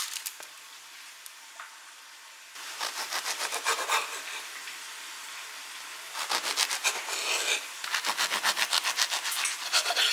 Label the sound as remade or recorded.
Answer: recorded